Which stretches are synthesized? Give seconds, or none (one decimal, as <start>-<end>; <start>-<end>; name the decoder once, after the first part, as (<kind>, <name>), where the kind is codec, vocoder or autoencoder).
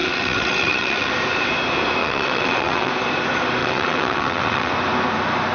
0.0-1.1 (vocoder, WaveNeXt); 2.0-2.9; 3.6-4.7